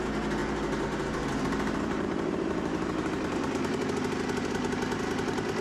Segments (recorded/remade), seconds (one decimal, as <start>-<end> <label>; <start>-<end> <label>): 0.0-0.4 recorded; 0.4-3.8 remade; 3.8-5.6 recorded